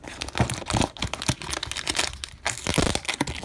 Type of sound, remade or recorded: recorded